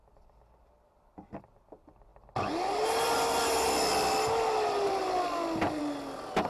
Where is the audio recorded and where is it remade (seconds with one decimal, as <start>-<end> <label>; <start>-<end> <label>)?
0.0-6.5 recorded